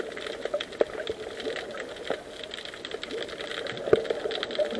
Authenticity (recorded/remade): recorded